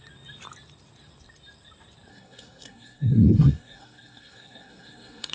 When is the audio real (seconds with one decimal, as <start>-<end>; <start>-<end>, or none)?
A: 0.0-2.1

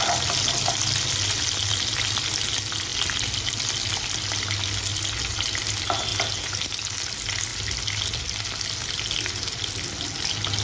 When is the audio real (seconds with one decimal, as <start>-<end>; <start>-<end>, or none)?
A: 0.0-10.6

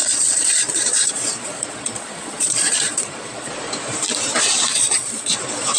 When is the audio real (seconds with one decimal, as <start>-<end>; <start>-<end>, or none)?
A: 3.5-4.7; 5.3-5.8

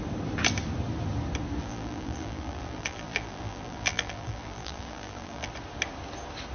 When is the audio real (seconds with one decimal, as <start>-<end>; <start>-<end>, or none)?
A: 0.0-1.6; 5.5-6.5

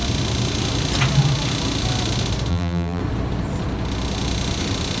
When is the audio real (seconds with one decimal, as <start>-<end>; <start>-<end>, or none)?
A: 0.0-2.5; 3.0-5.0

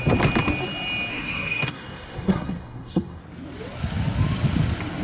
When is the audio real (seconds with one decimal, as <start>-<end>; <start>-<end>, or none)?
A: 0.0-1.1; 3.2-5.0

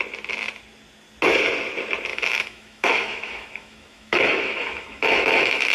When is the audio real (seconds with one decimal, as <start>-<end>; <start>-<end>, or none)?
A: 0.0-2.1

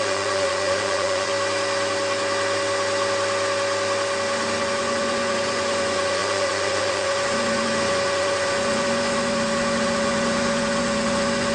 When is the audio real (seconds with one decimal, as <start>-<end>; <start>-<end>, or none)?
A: 1.3-4.6